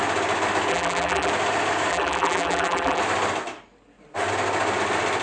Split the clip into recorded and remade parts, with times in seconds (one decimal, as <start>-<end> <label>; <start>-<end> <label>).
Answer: 0.0-0.7 recorded; 0.7-1.3 remade; 1.3-1.9 recorded; 1.9-3.0 remade; 3.0-5.2 recorded

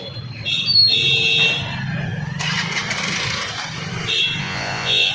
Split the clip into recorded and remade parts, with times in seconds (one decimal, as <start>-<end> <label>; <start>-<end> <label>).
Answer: 0.0-4.4 recorded; 4.4-5.1 remade